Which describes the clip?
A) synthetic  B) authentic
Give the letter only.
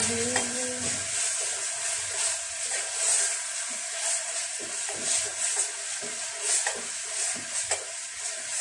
B